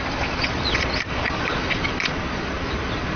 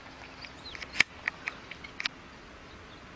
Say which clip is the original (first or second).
second